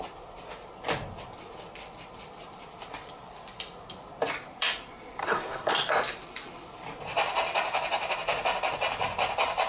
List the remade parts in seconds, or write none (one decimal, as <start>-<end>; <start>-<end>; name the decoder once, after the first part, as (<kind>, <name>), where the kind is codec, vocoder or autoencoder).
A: 5.2-5.7 (codec, SNAC)